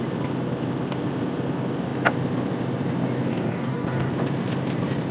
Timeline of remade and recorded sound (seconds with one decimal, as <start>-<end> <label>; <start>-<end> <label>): 0.0-3.3 recorded; 3.3-4.1 remade; 4.1-5.1 recorded